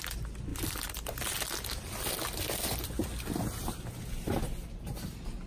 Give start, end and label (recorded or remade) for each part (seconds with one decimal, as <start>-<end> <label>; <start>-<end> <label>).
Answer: 0.0-5.5 recorded